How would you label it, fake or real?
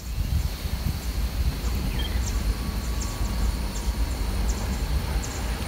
real